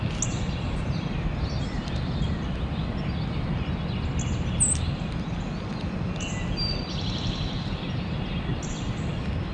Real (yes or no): yes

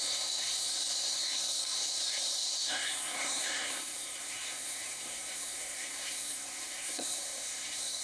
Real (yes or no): no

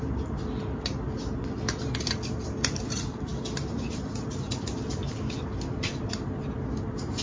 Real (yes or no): yes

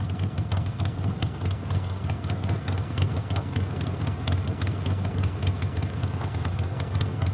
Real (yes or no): no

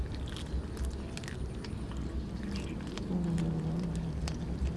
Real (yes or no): yes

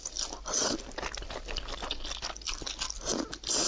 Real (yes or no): yes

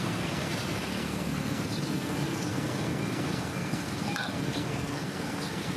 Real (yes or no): no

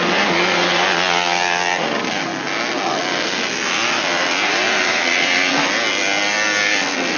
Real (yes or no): yes